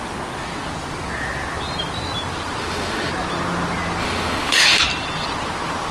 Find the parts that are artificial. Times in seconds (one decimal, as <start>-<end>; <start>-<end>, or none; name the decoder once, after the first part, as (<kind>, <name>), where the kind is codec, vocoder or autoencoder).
2.6-3.1 (autoencoder, DAC-VAE); 4.0-4.8